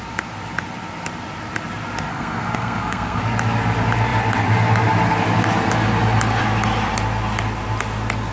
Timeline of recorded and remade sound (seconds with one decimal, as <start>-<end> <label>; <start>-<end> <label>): 0.0-2.1 recorded; 2.1-3.2 remade; 3.2-8.3 recorded

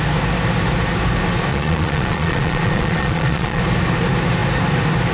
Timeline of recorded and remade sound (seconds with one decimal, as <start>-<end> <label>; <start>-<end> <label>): 0.0-1.5 recorded; 1.5-3.6 remade; 3.6-5.1 recorded

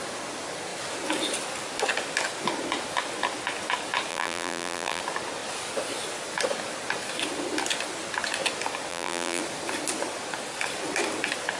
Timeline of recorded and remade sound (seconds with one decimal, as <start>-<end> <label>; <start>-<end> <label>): 0.0-4.1 recorded; 4.1-5.0 remade; 5.0-8.9 recorded; 8.9-9.4 remade; 9.4-11.6 recorded

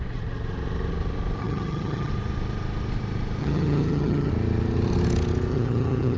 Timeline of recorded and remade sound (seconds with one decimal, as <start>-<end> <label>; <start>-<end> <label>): 0.0-1.4 recorded; 1.4-2.1 remade; 2.1-3.4 recorded; 3.4-4.3 remade; 4.3-5.5 recorded; 5.5-6.2 remade

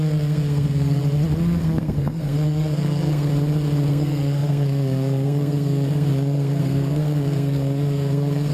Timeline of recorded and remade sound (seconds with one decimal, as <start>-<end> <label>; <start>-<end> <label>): 0.0-1.0 remade; 1.0-1.6 recorded; 1.6-3.3 remade; 3.3-3.9 recorded; 3.9-8.5 remade

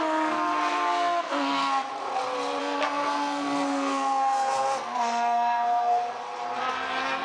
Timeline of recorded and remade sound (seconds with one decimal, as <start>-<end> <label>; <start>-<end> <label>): 0.0-1.9 remade; 1.9-2.6 recorded; 2.6-6.0 remade; 6.0-6.6 recorded; 6.6-7.2 remade

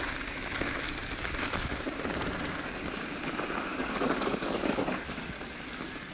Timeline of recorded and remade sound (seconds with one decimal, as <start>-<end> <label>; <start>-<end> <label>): 0.0-3.7 recorded; 3.7-5.4 remade; 5.4-6.1 recorded

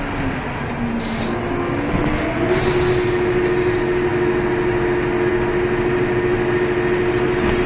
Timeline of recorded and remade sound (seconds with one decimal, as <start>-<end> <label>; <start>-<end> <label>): 0.0-7.7 recorded